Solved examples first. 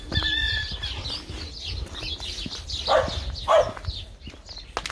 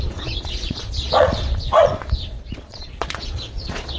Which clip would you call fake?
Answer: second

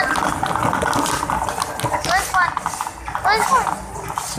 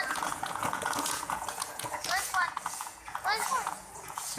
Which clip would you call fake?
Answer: second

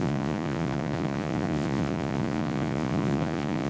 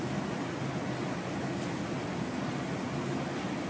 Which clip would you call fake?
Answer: first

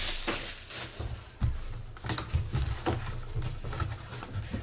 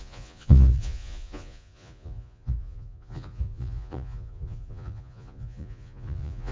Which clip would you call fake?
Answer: second